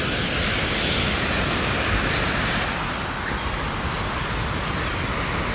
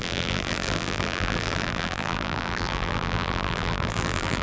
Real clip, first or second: first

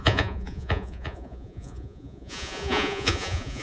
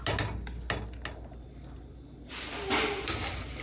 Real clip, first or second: second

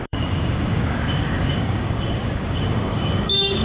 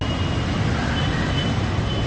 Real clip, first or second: second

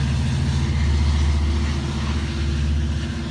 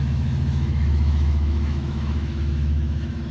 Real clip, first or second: first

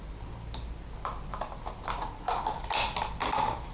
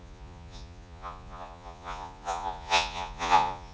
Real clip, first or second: first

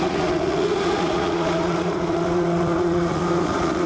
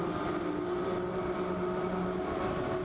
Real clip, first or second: second